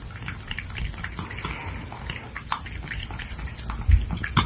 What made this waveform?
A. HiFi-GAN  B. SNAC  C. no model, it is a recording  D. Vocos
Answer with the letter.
C